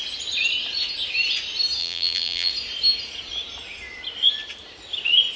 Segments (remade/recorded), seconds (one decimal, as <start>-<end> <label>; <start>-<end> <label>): 0.0-1.8 recorded; 1.8-2.5 remade; 2.5-5.4 recorded

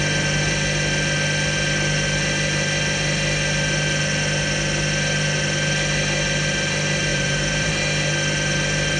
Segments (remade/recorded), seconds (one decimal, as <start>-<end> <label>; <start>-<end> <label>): 0.0-7.1 recorded; 7.1-7.7 remade; 7.7-9.0 recorded

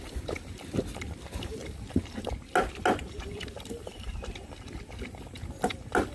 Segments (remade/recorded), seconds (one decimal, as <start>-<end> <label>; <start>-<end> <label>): 0.0-6.1 recorded

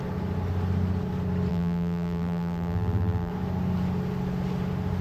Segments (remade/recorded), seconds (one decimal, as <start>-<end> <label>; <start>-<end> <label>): 0.0-1.5 recorded; 1.5-3.3 remade; 3.3-5.0 recorded